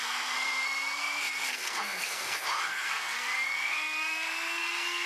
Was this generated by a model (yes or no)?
yes